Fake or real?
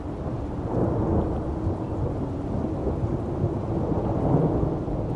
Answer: real